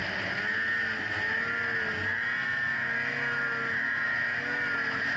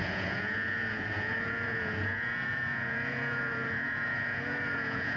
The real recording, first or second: first